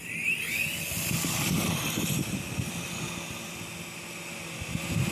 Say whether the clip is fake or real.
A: real